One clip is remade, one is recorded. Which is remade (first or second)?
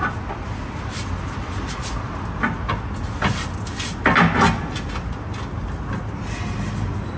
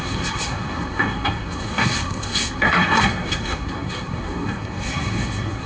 second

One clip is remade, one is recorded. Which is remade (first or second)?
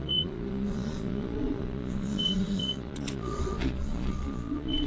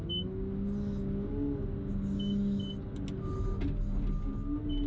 first